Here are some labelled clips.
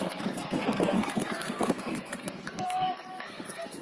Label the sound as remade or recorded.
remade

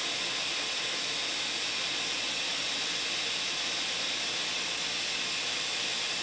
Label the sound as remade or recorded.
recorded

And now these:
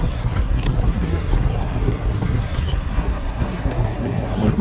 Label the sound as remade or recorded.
remade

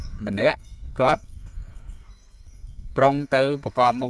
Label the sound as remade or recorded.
remade